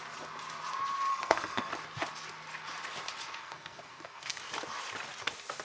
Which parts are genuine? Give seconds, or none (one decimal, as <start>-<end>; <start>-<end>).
0.0-1.1; 1.7-3.4; 4.4-5.6

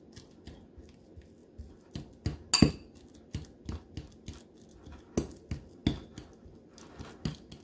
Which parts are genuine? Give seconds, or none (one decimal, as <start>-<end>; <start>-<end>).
0.0-7.6

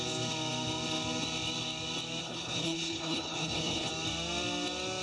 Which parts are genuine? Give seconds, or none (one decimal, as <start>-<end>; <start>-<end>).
0.0-2.2; 3.9-5.0

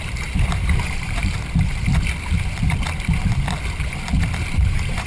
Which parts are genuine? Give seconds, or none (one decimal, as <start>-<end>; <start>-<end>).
1.4-4.5

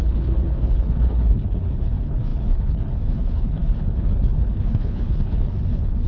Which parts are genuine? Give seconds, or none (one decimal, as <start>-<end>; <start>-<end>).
none

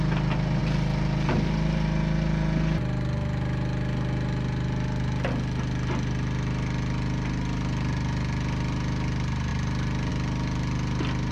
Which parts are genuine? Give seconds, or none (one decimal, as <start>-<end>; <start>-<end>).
0.0-11.3

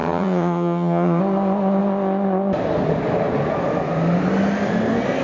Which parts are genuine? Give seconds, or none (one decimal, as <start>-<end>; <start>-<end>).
1.2-5.2